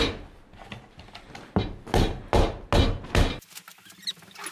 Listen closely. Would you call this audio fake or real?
real